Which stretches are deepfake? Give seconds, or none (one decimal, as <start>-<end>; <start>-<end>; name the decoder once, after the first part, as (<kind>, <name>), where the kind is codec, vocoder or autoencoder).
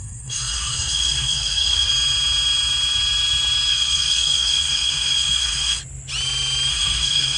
0.0-1.9 (codec, SNAC); 3.7-5.8; 6.7-7.4